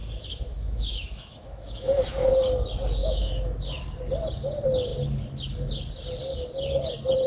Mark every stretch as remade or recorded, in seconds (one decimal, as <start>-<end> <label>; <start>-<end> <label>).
0.0-2.3 remade; 2.3-3.0 recorded; 3.0-3.6 remade; 3.6-7.3 recorded